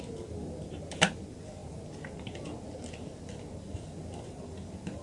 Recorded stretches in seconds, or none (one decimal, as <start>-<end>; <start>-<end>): 0.0-5.0